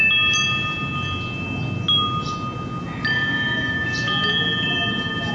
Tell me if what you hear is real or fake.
real